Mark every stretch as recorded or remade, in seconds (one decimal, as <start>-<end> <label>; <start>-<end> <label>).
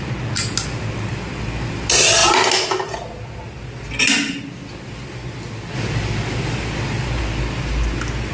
0.0-8.3 recorded